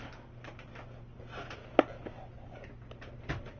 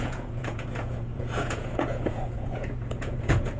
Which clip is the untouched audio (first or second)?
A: first